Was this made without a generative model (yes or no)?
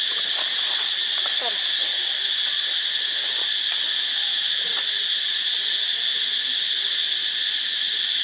yes